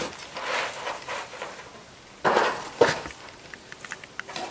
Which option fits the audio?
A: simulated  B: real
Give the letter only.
B